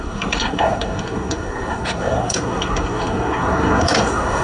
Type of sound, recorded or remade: remade